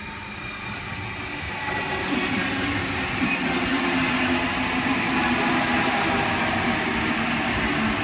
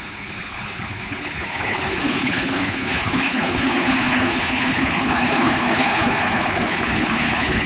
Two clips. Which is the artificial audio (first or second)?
second